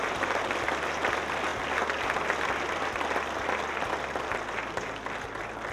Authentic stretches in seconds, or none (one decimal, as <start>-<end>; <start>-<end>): 0.0-5.7